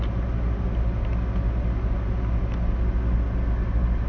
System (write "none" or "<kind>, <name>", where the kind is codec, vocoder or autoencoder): none